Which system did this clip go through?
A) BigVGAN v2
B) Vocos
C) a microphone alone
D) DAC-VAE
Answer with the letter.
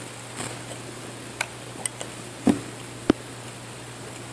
A